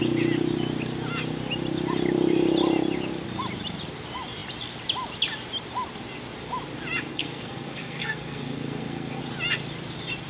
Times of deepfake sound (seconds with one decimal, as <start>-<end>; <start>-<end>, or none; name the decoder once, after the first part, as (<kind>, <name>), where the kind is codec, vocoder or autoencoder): 7.1-9.2 (codec, SNAC)